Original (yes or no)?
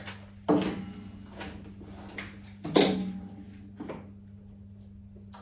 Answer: yes